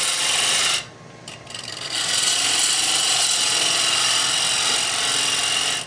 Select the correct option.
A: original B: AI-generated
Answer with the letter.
A